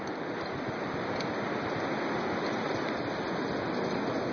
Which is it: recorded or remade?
recorded